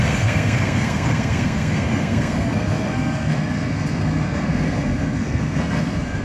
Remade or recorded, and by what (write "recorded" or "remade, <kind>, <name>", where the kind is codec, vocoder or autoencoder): remade, codec, SNAC